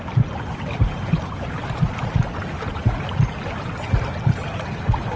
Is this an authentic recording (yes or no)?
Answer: yes